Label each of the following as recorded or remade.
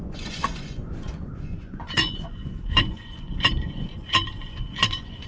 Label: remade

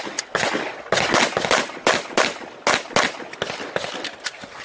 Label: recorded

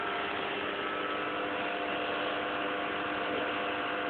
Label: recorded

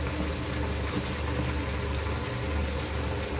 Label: recorded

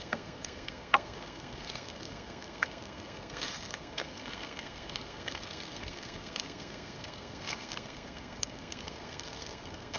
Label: remade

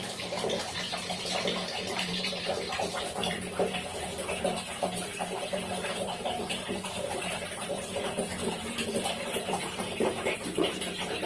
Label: remade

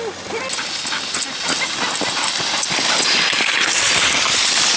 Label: recorded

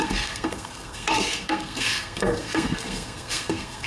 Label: remade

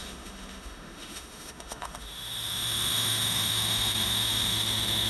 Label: remade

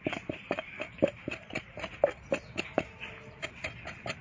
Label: recorded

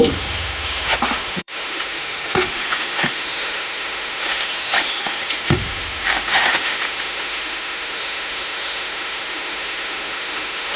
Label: remade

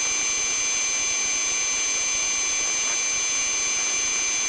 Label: recorded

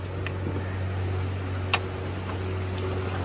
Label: recorded